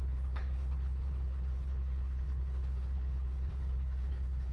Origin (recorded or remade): remade